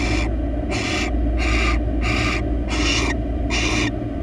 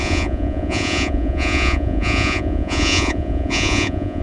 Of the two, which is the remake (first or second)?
second